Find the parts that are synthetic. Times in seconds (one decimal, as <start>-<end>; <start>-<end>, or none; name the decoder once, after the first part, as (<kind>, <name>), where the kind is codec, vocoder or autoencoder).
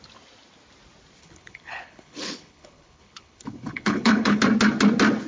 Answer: 1.2-4.4 (codec, HILCodec)